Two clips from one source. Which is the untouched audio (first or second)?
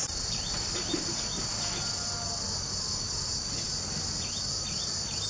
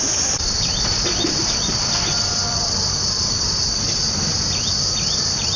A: first